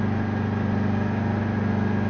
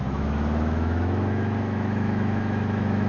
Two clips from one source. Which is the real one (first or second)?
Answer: first